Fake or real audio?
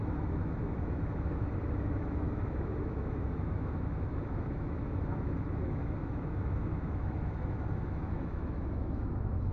fake